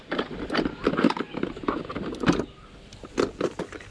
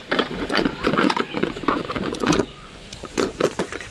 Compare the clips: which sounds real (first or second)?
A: first